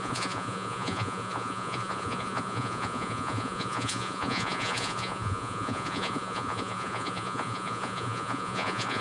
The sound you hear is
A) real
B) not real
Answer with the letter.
B